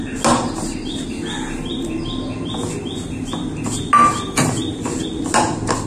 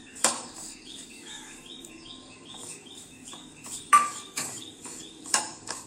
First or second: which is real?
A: first